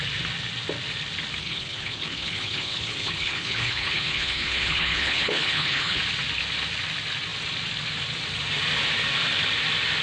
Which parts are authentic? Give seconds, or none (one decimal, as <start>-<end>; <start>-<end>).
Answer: 0.0-1.4; 6.0-10.0